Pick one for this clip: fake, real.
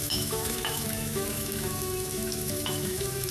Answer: fake